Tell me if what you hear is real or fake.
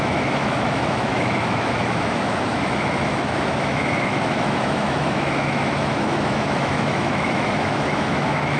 fake